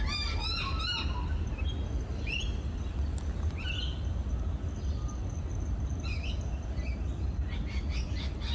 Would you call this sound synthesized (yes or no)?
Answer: no